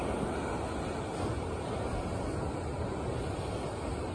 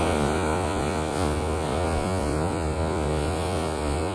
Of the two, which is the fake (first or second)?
second